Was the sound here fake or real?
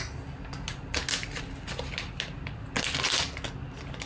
real